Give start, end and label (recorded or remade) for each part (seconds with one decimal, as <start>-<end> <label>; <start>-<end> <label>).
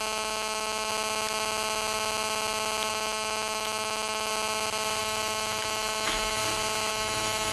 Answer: 0.0-0.9 remade; 0.9-2.9 recorded; 2.9-4.3 remade; 4.3-5.0 recorded; 5.0-6.4 remade; 6.4-6.9 recorded; 6.9-7.5 remade